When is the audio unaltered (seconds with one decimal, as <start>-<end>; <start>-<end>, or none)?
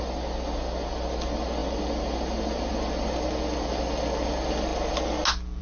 0.0-5.6